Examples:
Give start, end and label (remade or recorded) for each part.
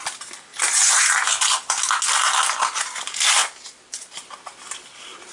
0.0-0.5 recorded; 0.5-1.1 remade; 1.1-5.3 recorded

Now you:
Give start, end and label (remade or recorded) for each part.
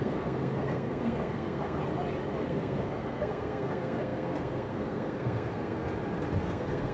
0.0-1.8 remade; 1.8-2.4 recorded; 2.4-5.8 remade; 5.8-6.4 recorded; 6.4-6.9 remade